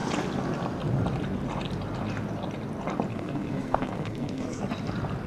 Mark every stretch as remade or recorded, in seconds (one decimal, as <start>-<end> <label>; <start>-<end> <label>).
0.0-3.1 recorded; 3.1-4.6 remade; 4.6-5.3 recorded